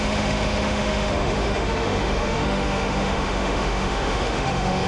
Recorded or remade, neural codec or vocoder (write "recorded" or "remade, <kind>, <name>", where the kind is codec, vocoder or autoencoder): remade, autoencoder, DAC-VAE